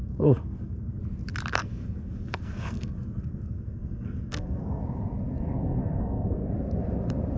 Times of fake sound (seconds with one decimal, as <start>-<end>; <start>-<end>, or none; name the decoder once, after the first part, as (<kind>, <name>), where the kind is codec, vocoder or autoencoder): 0.0-1.0 (codec, SNAC); 1.5-4.8; 5.8-6.5